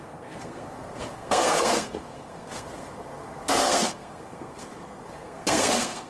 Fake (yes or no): yes